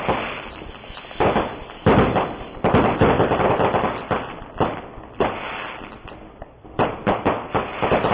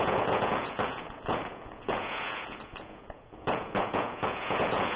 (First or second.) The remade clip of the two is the second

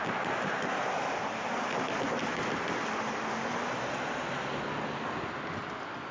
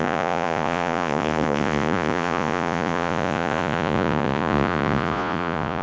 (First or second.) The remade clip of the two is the second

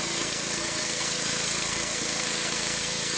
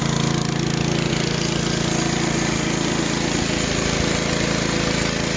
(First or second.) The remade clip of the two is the first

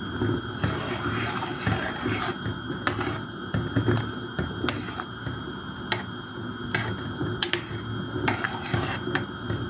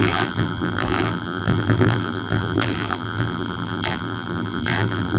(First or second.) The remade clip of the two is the second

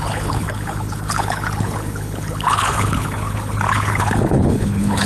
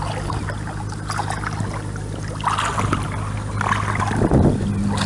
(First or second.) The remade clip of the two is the first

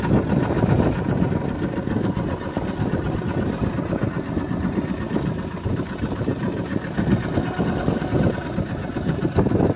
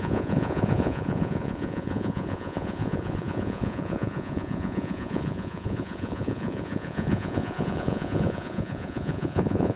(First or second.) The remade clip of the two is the second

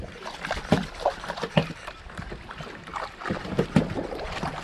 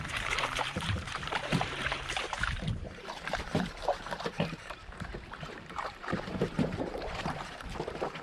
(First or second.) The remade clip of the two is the second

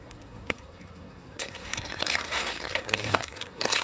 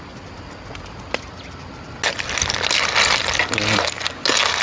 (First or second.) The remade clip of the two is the first